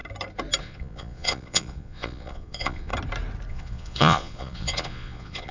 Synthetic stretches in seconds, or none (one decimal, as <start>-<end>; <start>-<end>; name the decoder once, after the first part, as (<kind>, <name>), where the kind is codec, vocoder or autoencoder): 0.6-2.9 (vocoder, Vocos); 3.5-5.5